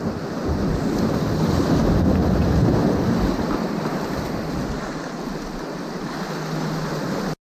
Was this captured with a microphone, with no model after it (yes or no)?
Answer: yes